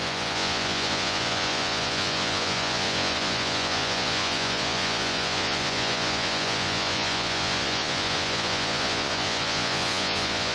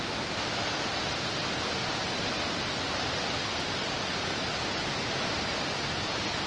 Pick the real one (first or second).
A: second